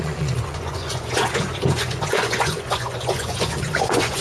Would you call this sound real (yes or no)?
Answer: no